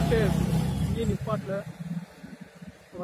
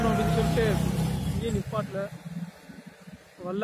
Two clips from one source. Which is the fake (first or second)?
first